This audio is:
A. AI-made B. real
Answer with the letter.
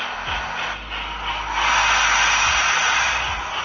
B